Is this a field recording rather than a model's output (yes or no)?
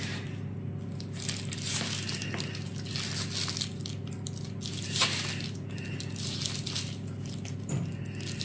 yes